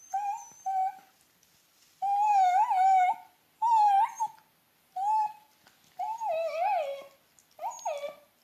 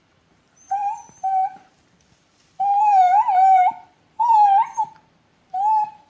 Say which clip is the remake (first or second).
second